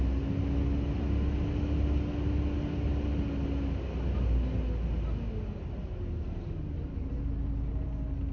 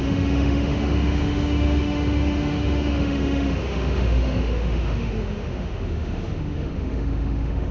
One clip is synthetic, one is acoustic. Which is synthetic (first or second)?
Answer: second